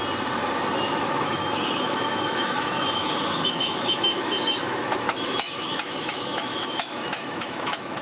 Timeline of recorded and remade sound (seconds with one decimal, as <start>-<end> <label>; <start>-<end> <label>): 0.0-0.8 recorded; 0.8-8.0 remade

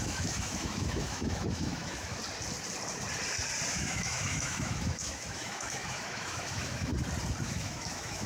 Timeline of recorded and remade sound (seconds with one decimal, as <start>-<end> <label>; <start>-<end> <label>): 0.0-2.2 remade; 2.2-3.7 recorded; 3.7-6.9 remade; 6.9-7.4 recorded; 7.4-8.3 remade